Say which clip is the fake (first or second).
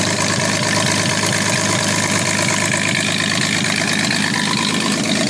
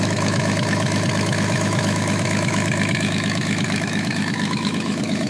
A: second